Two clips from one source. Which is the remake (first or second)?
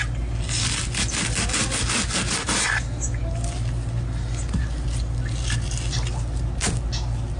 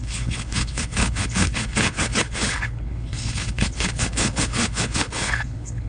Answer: second